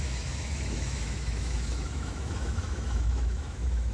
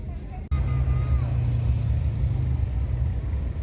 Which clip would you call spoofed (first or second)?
first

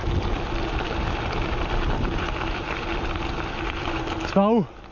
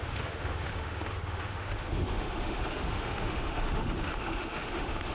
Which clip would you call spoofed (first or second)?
second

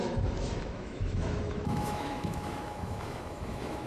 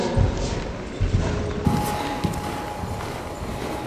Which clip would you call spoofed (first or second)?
first